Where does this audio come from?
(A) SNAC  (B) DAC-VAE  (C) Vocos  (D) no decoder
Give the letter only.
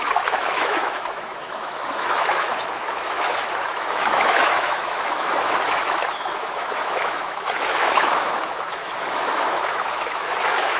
B